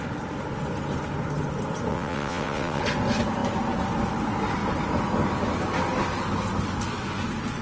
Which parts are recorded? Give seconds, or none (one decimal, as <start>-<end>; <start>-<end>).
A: 0.0-1.9; 2.8-7.6